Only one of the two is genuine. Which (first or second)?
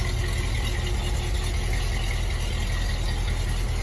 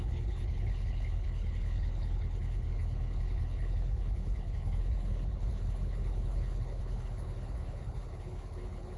first